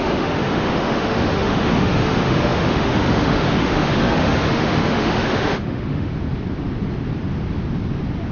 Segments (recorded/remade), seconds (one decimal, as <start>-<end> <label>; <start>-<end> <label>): 0.0-6.1 remade; 6.1-8.3 recorded